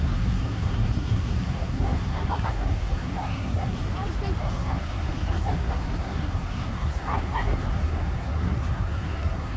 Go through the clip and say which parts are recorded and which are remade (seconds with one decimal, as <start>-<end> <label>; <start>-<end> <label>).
0.0-3.9 remade; 3.9-4.4 recorded; 4.4-9.6 remade